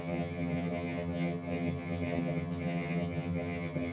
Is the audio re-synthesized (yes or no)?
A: yes